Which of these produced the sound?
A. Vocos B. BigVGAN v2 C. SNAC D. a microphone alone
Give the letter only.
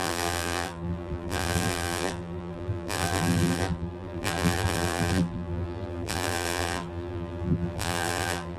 B